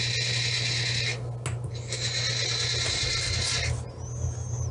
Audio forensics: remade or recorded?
recorded